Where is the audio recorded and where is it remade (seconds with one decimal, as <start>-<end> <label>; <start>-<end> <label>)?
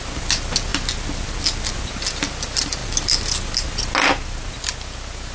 0.0-5.3 recorded